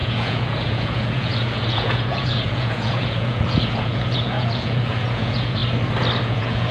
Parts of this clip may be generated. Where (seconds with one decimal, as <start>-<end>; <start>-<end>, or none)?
0.0-5.6; 6.2-6.7